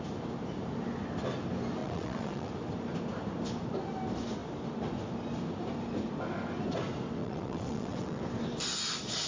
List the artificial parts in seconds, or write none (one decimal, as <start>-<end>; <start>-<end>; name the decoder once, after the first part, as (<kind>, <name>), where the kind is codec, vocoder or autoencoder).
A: 1.8-2.5 (vocoder, WaveNeXt); 7.2-8.2